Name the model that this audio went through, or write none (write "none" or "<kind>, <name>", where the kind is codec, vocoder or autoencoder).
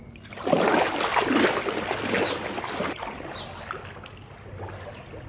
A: none